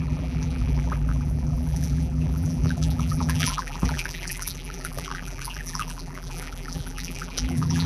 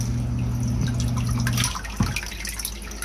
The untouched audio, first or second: second